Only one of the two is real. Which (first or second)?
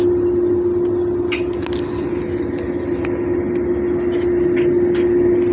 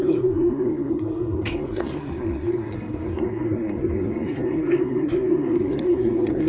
first